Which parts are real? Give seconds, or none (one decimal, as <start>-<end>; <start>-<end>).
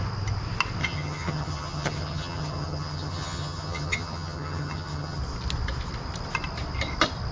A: 0.0-0.8; 5.2-7.3